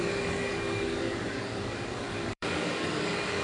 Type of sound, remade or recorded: remade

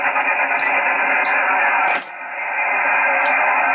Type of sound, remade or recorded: recorded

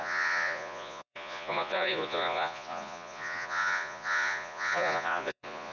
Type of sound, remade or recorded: remade